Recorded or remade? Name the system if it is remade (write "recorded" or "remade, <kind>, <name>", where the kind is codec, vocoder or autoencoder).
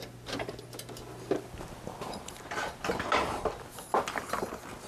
recorded